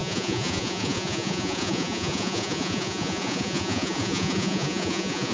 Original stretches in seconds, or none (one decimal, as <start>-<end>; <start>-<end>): none